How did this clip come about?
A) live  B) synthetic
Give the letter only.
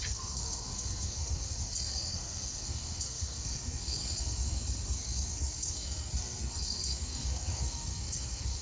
B